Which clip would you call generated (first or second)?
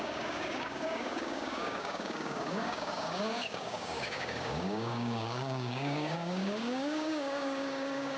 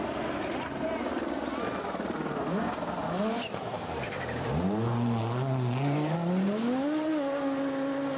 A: first